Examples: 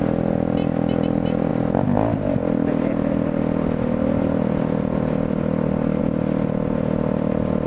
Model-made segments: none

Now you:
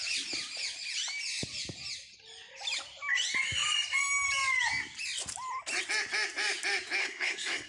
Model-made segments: 7.0-7.7 (codec, SNAC)

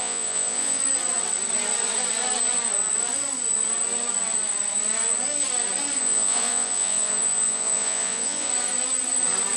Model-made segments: 0.0-0.8 (vocoder, Vocos); 6.0-8.5